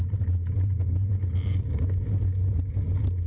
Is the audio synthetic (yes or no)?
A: no